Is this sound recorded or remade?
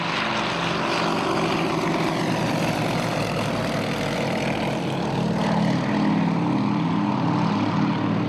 recorded